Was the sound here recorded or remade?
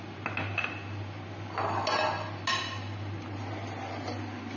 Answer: recorded